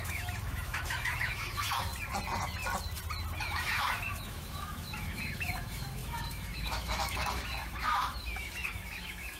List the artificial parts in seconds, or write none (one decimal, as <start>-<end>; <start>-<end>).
0.0-1.9; 3.4-9.4